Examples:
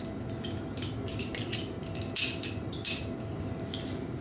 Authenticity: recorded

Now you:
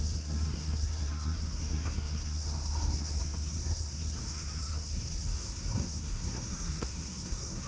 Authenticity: remade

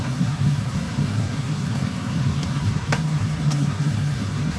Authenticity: remade